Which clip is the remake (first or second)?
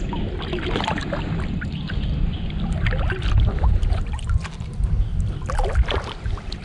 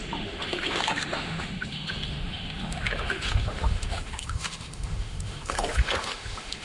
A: second